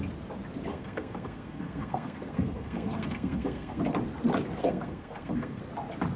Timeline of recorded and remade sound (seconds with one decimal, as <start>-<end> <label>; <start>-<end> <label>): 0.0-0.7 recorded; 0.7-3.8 remade; 3.8-4.6 recorded; 4.6-5.6 remade; 5.6-6.2 recorded